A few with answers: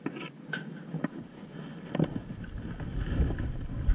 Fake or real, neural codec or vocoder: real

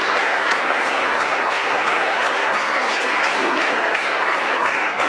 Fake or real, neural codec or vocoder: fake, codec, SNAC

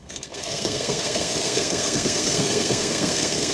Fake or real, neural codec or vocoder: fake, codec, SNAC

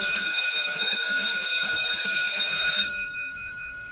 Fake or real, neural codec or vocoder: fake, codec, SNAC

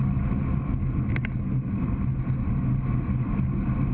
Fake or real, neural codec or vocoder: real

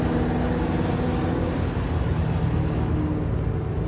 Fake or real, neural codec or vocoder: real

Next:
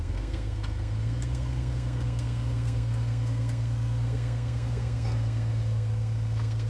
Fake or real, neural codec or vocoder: fake, codec, SNAC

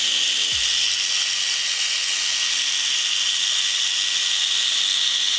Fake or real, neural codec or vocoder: real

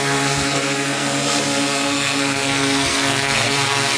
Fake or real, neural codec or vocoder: fake, codec, SNAC